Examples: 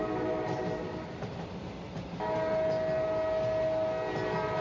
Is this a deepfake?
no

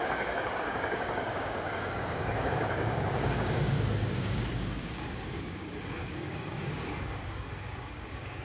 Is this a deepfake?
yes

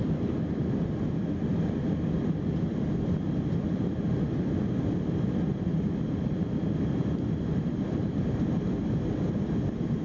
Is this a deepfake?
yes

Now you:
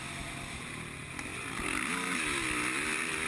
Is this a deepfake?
no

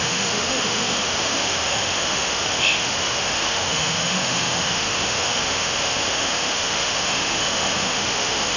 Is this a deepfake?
yes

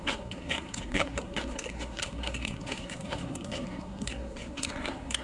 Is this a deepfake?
yes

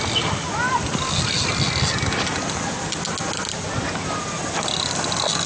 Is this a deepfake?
no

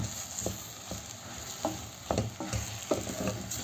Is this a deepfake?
no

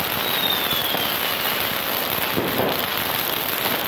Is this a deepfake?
no